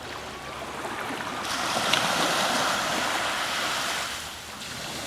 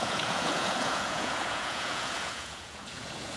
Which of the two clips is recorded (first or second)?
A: first